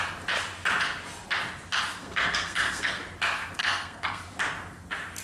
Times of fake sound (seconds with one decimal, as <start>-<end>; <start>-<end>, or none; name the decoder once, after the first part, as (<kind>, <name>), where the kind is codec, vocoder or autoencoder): 2.0-3.0 (codec, SNAC); 3.6-4.2